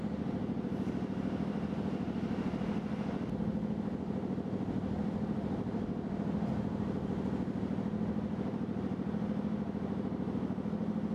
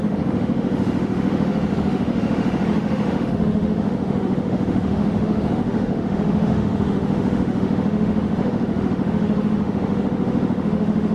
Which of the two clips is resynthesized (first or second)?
second